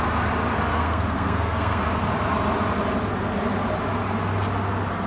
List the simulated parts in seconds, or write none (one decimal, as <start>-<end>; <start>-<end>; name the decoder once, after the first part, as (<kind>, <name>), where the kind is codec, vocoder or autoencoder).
0.7-1.8 (codec, SNAC)